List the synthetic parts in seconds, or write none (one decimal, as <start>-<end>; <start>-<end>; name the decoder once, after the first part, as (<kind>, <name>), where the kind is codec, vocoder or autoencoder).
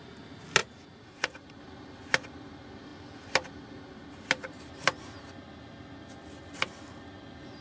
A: 0.6-1.6 (vocoder, Vocos)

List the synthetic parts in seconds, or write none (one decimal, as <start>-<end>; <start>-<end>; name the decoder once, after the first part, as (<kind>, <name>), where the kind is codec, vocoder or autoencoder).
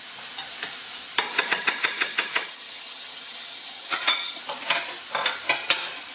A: 1.3-4.4 (vocoder, HiFi-GAN)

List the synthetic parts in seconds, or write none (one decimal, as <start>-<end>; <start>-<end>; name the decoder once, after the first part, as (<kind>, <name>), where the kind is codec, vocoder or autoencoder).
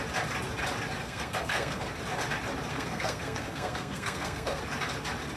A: 1.0-1.8 (codec, SNAC); 2.7-4.6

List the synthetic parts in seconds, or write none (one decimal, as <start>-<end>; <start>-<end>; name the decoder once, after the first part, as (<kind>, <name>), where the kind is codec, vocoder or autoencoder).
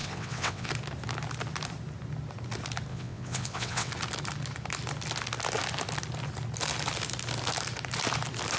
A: 0.0-0.7 (vocoder, WaveNeXt); 2.9-3.9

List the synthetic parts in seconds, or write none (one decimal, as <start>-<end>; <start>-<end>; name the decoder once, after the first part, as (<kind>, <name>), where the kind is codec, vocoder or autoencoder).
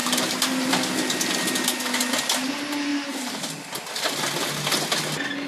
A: 0.0-0.7 (vocoder, BigVGAN v2); 2.9-3.4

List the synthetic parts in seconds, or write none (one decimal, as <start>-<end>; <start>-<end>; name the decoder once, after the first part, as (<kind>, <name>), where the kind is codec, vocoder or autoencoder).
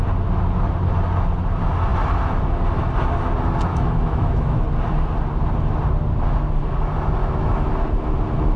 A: 3.7-4.6 (autoencoder, DAC-VAE); 7.2-7.7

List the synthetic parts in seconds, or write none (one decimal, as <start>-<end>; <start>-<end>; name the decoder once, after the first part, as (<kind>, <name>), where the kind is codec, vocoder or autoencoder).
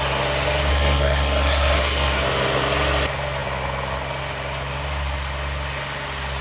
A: 0.7-2.2 (codec, SNAC)